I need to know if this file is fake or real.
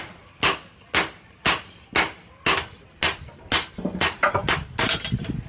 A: real